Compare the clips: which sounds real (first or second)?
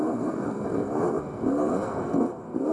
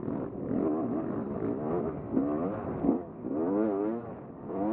second